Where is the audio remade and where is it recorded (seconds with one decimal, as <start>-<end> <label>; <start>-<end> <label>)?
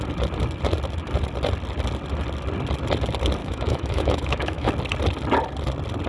0.0-3.4 recorded; 3.4-4.7 remade; 4.7-6.1 recorded